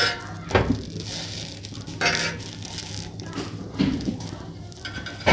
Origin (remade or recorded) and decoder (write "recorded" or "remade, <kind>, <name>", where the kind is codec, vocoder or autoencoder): recorded